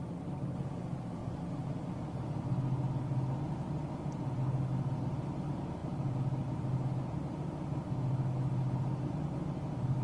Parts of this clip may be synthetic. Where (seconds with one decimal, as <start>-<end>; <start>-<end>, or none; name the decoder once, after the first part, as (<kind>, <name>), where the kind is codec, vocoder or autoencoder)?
1.2-1.8 (vocoder, BigVGAN v2)

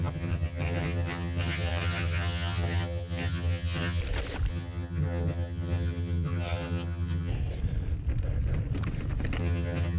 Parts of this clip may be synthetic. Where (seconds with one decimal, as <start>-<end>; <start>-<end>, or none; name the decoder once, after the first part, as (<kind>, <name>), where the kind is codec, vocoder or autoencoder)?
0.0-4.0 (vocoder, HiFi-GAN); 4.5-7.3; 9.4-10.0

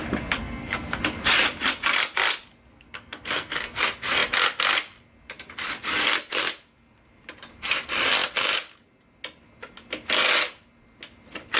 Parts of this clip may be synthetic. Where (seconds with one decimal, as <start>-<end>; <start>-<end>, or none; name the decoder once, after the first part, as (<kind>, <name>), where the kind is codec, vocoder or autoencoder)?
0.4-1.0 (codec, SNAC); 2.7-3.8

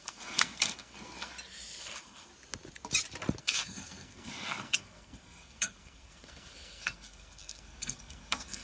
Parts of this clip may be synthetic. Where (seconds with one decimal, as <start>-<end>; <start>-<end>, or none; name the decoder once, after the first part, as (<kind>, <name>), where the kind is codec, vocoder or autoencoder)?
0.0-1.3 (codec, SNAC); 1.8-2.3; 3.4-8.6

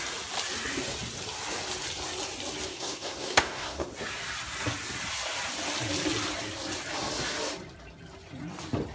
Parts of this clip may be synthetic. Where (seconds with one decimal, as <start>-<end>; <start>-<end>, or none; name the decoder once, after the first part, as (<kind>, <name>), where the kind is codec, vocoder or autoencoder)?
2.7-3.9 (codec, SNAC)

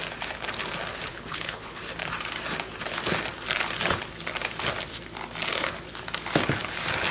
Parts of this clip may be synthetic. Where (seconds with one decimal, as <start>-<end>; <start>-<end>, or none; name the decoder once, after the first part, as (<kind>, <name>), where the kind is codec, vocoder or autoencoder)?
1.1-1.8 (codec, HILCodec)